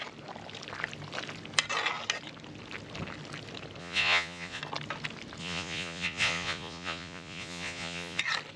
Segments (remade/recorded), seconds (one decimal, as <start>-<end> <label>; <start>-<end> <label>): 0.0-3.8 recorded; 3.8-4.6 remade; 4.6-5.4 recorded; 5.4-8.2 remade; 8.2-8.6 recorded